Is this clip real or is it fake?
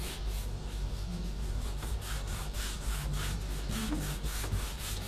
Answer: fake